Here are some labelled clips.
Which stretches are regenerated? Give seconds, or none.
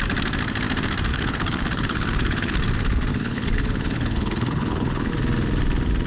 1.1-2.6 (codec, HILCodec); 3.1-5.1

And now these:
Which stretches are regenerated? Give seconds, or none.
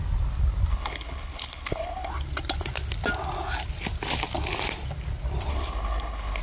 0.7-2.1 (codec, HILCodec); 5.5-6.4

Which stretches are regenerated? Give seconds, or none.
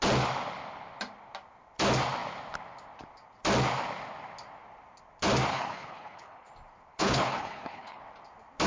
5.5-6.5 (codec, HILCodec); 6.9-8.0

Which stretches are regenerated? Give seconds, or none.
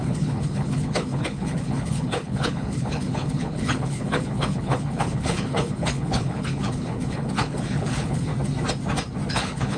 0.0-8.3 (codec, HILCodec); 9.3-9.8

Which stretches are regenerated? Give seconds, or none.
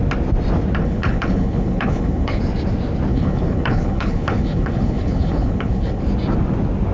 0.8-2.4 (codec, HILCodec); 3.1-6.0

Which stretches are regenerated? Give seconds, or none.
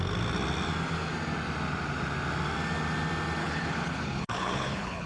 3.4-5.1 (codec, HILCodec)